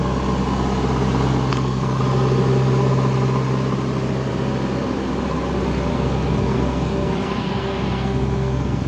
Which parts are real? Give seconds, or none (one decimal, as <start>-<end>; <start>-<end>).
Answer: 0.0-1.5; 2.0-5.9